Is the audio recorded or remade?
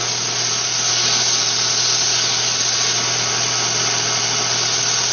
recorded